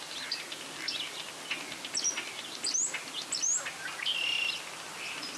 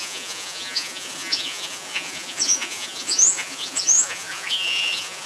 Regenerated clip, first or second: second